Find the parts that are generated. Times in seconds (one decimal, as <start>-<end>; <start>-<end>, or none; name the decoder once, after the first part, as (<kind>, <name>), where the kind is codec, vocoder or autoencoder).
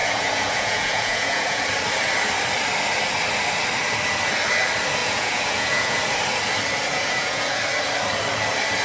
0.0-1.6 (vocoder, Vocos); 5.0-6.0; 6.9-7.6